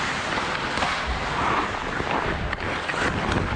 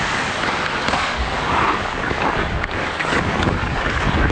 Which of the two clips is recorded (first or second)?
first